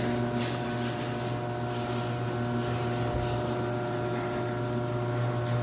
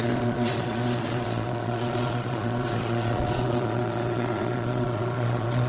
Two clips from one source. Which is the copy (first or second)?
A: second